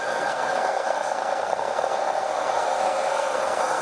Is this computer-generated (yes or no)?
yes